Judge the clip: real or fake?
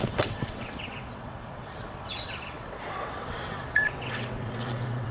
fake